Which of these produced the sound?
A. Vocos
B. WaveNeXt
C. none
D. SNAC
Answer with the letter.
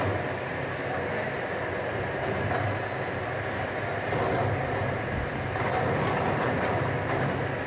C